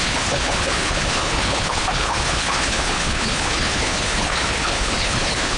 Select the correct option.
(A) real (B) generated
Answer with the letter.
B